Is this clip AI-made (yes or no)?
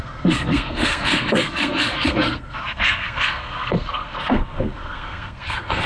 yes